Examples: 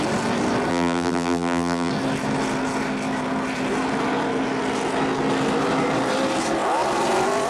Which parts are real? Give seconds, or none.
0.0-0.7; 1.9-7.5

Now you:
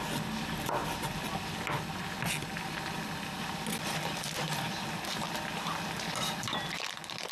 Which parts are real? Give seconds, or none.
0.0-7.3

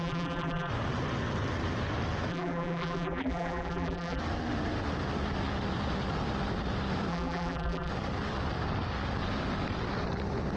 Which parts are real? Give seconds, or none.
0.7-2.3; 4.2-7.1; 7.9-10.6

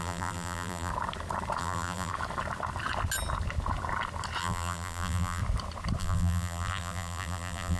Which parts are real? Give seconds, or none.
0.9-1.6; 2.1-4.4; 5.4-6.0

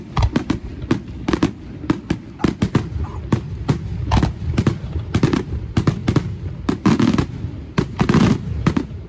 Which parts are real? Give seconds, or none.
0.7-4.5; 6.0-8.3

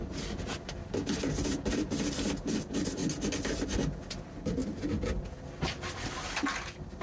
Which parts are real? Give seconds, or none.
0.0-4.6; 5.2-7.0

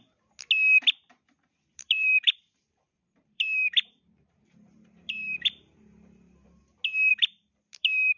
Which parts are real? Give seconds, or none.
0.0-1.7; 6.6-7.1